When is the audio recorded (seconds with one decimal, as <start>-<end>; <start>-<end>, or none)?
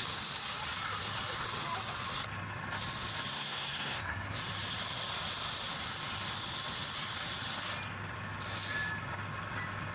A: 0.0-3.3; 4.4-9.9